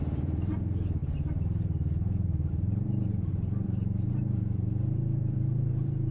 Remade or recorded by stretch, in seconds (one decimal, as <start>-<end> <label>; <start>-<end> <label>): 0.0-6.1 remade